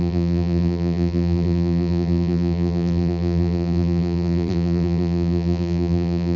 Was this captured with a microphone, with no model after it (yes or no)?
no